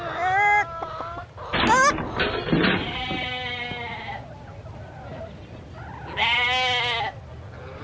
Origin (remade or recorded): recorded